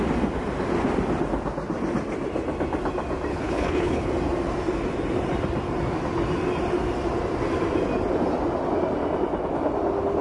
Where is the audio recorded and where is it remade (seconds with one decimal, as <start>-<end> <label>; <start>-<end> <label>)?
0.0-3.3 recorded; 3.3-4.1 remade; 4.1-10.2 recorded